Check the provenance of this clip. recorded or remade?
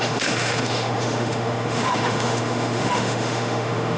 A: remade